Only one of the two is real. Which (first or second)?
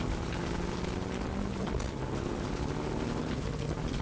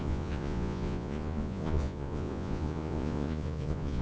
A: first